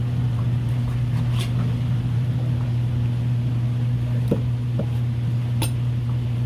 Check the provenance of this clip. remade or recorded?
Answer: recorded